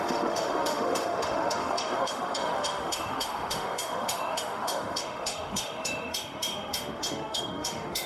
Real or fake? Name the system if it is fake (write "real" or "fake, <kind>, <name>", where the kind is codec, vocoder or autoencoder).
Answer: fake, autoencoder, DAC-VAE